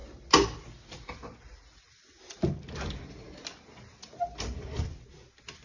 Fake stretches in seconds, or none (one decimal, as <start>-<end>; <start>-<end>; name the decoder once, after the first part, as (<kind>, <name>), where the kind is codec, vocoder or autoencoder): none